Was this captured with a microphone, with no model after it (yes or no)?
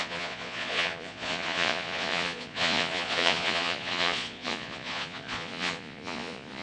no